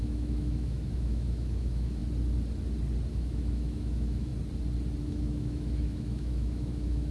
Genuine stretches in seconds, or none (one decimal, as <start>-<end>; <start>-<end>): 2.0-3.1; 4.3-5.0